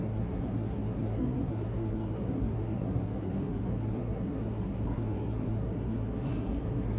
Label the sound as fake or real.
fake